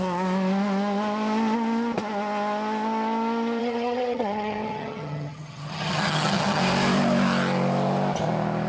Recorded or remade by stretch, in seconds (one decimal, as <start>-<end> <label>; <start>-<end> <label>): 0.0-3.6 recorded; 3.6-6.6 remade; 6.6-8.7 recorded